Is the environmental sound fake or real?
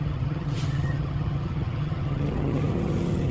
fake